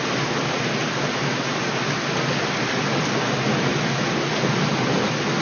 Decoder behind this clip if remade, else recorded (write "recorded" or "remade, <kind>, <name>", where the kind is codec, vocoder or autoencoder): recorded